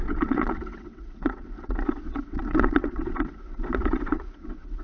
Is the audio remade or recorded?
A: remade